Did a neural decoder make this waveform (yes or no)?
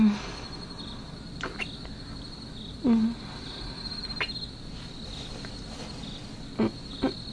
no